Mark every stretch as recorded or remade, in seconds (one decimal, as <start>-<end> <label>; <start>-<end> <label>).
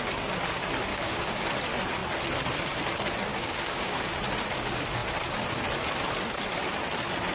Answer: 0.0-0.9 recorded; 0.9-1.5 remade; 1.5-3.3 recorded; 3.3-4.0 remade; 4.0-7.3 recorded